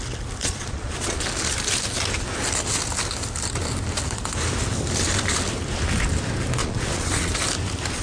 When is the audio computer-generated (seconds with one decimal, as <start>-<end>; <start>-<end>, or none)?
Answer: 0.4-1.2; 6.6-7.3